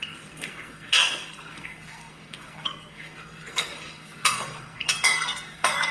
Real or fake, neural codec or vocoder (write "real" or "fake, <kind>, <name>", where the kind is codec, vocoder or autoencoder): fake, codec, SNAC